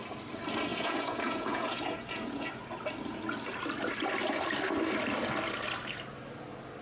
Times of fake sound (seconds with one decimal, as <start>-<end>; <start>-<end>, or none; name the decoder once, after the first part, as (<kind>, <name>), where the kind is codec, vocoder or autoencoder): 0.7-2.5 (vocoder, Vocos)